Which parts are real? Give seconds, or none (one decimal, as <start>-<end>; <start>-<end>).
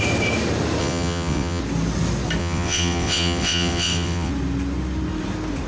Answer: 0.0-0.8; 1.6-2.4; 4.3-5.7